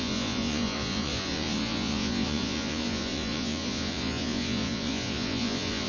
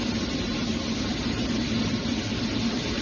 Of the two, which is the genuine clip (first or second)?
second